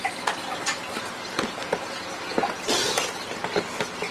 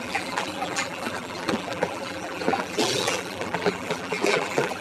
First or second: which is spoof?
second